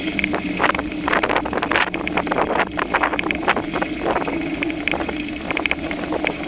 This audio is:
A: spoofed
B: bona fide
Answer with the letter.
B